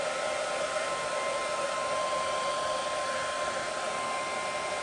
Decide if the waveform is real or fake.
real